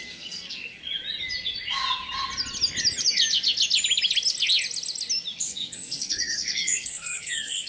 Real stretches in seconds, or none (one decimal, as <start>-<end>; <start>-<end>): 0.8-5.4